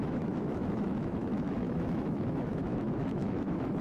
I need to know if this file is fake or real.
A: fake